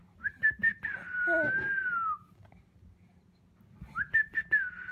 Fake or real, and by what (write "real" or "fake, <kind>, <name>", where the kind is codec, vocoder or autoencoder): real